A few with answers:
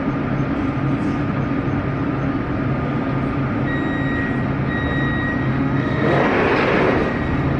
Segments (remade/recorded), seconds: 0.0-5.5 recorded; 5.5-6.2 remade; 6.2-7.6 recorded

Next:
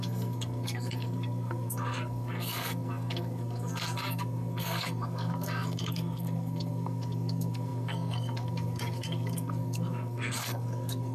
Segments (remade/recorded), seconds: 0.0-11.1 remade

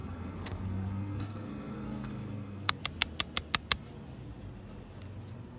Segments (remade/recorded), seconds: 0.0-2.8 remade; 2.8-5.6 recorded

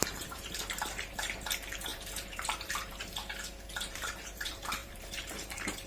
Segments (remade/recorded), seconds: 0.0-3.2 remade; 3.2-3.7 recorded; 3.7-5.9 remade

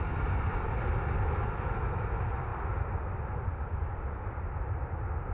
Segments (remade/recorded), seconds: 0.0-5.3 recorded